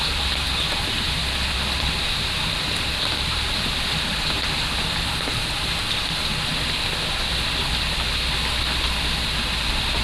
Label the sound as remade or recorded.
recorded